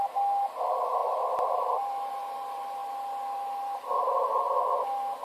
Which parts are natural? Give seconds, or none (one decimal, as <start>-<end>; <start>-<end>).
0.0-1.0; 2.1-2.8; 4.1-5.2

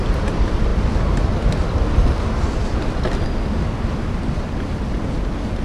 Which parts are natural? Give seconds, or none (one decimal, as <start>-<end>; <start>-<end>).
0.0-5.6

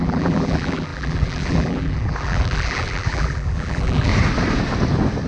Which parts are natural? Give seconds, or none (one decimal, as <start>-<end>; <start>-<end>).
4.1-5.3